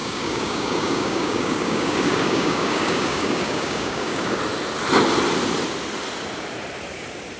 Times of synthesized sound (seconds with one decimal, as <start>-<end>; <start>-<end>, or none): 0.0-4.4